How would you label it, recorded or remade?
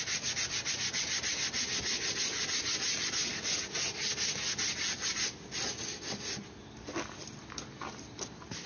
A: recorded